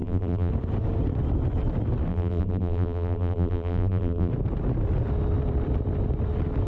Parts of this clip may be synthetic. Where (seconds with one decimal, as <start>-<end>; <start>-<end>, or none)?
0.0-0.5; 2.1-4.3